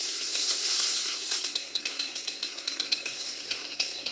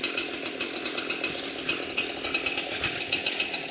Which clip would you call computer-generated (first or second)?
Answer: first